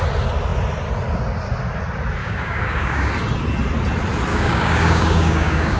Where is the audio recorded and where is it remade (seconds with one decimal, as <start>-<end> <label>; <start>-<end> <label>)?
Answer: 0.0-2.2 recorded; 2.2-3.1 remade; 3.1-4.3 recorded; 4.3-5.8 remade